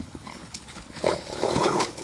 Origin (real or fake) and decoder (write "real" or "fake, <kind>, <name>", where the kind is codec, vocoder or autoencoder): fake, codec, HILCodec